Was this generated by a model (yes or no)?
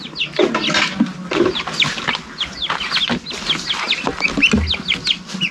no